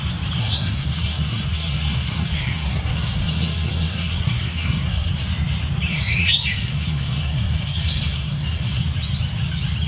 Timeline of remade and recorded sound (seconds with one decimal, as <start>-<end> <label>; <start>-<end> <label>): 0.0-0.4 recorded; 0.4-5.1 remade; 5.1-5.9 recorded; 5.9-8.8 remade; 8.8-9.9 recorded